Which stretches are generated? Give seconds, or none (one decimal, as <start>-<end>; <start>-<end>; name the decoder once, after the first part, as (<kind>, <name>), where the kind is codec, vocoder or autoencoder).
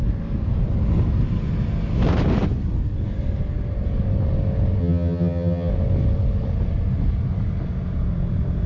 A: 4.8-5.7 (vocoder, HiFi-GAN)